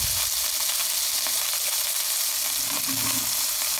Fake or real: real